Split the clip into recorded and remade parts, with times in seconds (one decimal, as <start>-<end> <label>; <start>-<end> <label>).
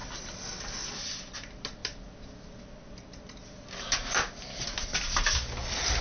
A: 0.0-6.0 recorded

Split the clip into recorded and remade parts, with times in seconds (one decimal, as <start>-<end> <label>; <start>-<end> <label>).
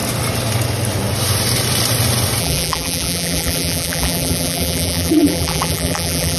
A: 0.0-2.4 recorded; 2.4-6.4 remade